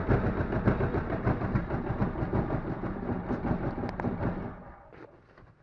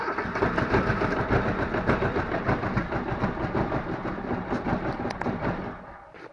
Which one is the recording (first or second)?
first